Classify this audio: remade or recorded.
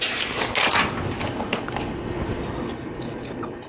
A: recorded